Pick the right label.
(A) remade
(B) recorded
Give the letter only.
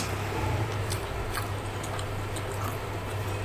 B